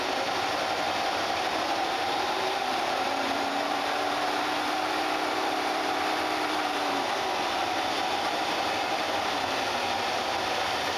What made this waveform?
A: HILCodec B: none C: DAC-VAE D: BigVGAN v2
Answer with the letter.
D